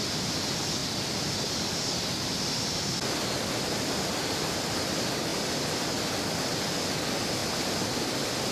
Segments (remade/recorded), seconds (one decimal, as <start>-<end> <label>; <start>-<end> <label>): 0.0-8.5 recorded